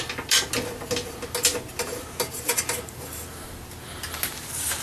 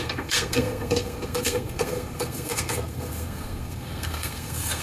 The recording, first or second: first